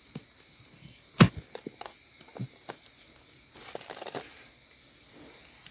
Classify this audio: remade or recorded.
recorded